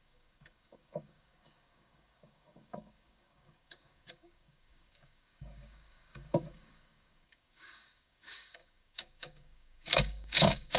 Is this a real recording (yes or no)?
no